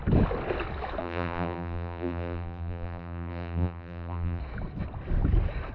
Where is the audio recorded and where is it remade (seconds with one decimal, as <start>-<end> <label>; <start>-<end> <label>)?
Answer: 0.0-1.0 recorded; 1.0-4.4 remade; 4.4-5.7 recorded